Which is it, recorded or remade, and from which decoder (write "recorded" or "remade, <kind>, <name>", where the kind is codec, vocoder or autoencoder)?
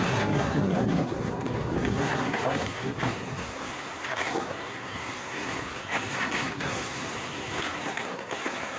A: remade, codec, SNAC